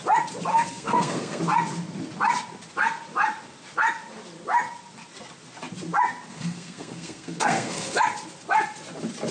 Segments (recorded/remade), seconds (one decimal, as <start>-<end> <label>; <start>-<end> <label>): 0.0-0.5 recorded; 0.5-1.4 remade; 1.4-6.3 recorded; 6.3-8.0 remade; 8.0-9.3 recorded